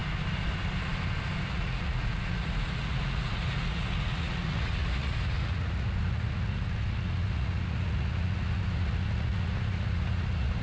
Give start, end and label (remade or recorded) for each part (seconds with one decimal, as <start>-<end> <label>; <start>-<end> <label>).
0.0-1.5 recorded; 1.5-10.6 remade